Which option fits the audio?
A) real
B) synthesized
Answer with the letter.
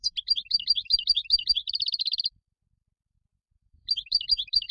B